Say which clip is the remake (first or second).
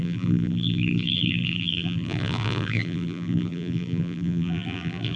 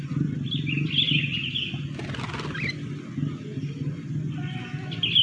first